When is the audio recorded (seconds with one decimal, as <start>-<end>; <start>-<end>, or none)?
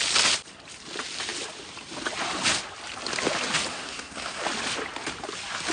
0.0-3.7; 4.4-5.7